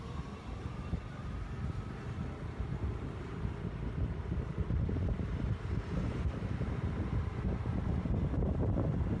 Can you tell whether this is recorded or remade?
remade